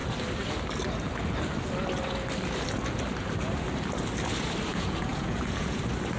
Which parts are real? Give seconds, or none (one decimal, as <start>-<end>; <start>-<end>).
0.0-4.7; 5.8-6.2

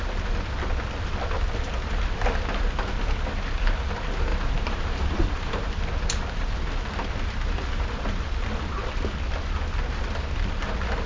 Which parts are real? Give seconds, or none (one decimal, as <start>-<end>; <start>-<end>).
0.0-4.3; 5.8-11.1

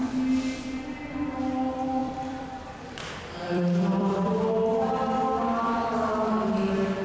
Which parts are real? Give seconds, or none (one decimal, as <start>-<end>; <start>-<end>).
0.0-2.0; 4.4-5.8; 6.3-7.0

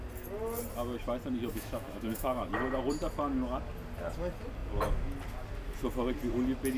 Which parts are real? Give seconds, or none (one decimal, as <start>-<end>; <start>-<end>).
0.0-1.5; 2.5-6.8